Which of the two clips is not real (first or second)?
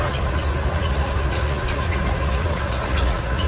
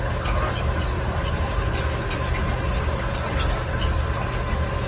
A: first